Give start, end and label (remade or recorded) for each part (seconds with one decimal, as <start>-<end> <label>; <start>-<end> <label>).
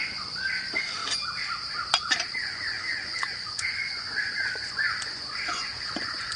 0.0-1.0 remade; 1.0-2.3 recorded; 2.3-6.4 remade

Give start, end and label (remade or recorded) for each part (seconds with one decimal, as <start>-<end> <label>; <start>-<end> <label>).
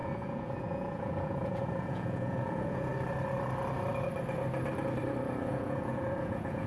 0.0-2.9 remade; 2.9-5.5 recorded; 5.5-6.7 remade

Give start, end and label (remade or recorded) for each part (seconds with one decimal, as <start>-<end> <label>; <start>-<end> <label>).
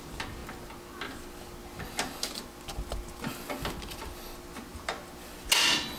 0.0-6.0 recorded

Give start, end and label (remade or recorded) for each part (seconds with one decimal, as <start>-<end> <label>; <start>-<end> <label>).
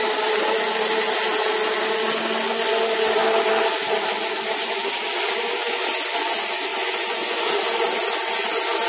0.0-6.7 recorded; 6.7-7.5 remade; 7.5-8.9 recorded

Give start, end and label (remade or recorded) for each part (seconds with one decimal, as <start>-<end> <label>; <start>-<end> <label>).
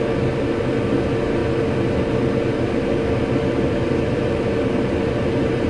0.0-5.7 recorded